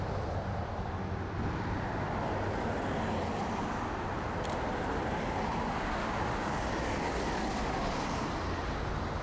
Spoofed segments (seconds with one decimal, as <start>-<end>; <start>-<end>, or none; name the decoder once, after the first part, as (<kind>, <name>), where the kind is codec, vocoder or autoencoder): 6.0-7.9 (codec, DAC)